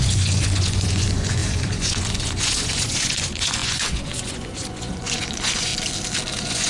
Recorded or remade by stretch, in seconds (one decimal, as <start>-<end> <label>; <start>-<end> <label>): 0.0-5.7 remade; 5.7-6.3 recorded; 6.3-6.7 remade